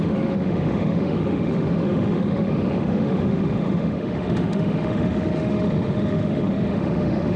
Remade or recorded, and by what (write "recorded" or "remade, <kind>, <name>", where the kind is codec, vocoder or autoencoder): remade, autoencoder, DAC-VAE